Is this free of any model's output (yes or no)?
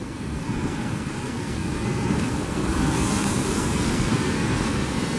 no